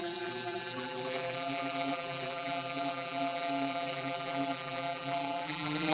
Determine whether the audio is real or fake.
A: fake